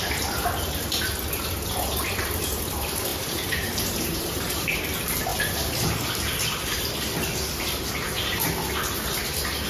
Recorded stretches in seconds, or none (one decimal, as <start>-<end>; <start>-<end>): 0.0-3.1; 4.8-9.7